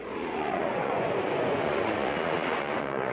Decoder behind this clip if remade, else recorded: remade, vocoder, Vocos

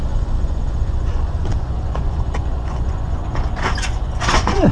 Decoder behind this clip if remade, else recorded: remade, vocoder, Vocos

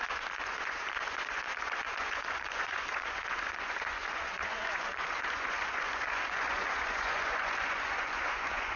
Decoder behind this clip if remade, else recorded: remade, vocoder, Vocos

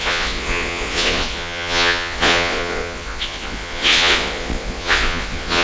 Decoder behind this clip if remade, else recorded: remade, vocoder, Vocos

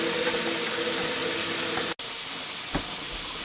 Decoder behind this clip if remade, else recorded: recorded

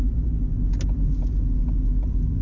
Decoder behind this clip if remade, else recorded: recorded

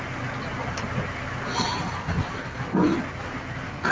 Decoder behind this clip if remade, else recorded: recorded